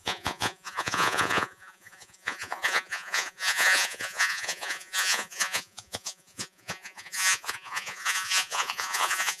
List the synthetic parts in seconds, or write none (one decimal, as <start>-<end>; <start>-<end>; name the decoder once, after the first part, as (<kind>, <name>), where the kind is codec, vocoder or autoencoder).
0.0-9.4 (vocoder, Vocos)